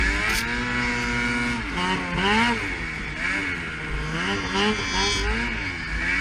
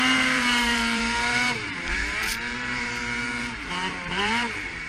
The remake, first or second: second